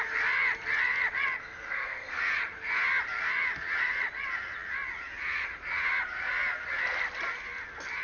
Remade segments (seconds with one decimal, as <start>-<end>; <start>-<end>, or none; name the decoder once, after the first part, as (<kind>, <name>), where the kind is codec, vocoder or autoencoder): 1.4-2.2 (codec, SNAC)